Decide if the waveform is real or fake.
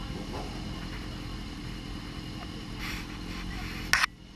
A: real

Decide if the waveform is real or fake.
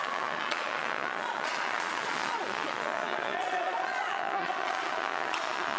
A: fake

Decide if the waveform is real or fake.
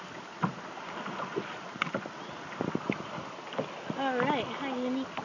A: real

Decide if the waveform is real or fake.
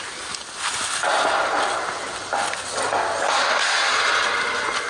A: real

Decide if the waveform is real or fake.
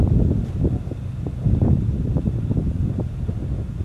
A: real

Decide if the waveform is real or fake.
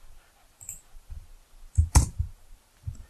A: real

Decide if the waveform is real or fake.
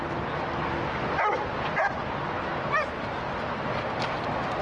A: real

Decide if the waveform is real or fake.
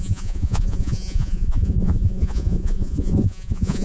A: fake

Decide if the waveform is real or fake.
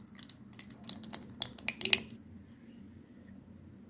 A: real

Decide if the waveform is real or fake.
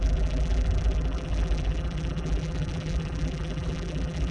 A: fake